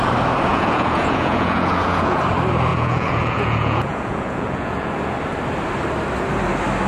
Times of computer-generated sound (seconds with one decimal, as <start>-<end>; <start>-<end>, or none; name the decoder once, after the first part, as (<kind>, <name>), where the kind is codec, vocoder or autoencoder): 0.5-2.2 (vocoder, Vocos); 2.7-4.9